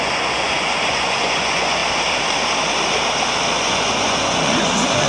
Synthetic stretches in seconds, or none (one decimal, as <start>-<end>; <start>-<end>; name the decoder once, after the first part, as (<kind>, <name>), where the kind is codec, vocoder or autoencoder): 0.0-1.8 (vocoder, Vocos); 3.6-5.1